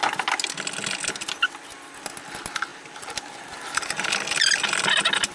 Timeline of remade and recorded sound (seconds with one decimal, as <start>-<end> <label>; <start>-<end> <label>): 0.0-2.7 recorded; 2.7-4.1 remade; 4.1-5.3 recorded